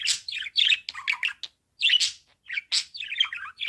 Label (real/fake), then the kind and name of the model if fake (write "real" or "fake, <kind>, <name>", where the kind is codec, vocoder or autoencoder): real